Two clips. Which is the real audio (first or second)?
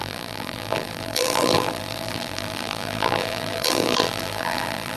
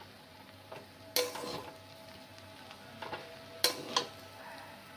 second